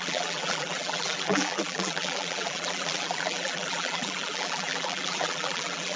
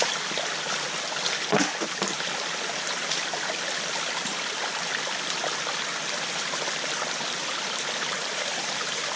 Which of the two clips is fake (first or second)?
first